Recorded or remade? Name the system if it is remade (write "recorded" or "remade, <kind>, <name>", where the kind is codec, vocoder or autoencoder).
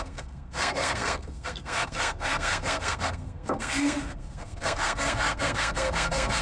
remade, codec, SNAC